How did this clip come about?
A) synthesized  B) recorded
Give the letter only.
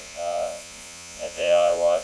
A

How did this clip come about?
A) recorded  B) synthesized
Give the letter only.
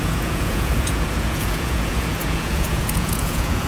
B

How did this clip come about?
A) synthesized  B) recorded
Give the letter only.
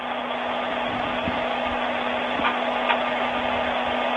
B